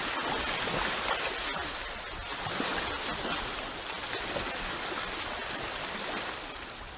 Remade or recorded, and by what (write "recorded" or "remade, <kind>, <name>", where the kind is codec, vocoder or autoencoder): recorded